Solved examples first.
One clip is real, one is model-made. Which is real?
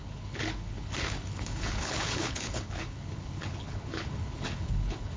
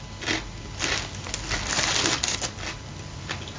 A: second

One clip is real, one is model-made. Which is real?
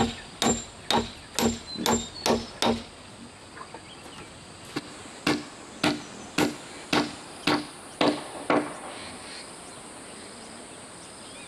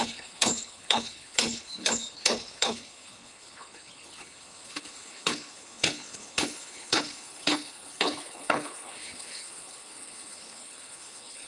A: first